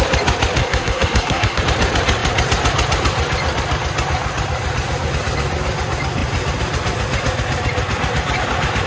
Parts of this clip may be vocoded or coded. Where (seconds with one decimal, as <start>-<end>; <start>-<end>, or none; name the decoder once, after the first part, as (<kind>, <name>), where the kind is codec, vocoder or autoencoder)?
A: 0.6-1.6 (codec, SNAC)